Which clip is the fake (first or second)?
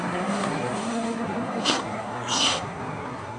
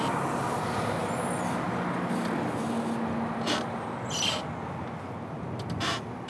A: first